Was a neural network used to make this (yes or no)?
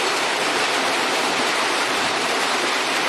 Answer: yes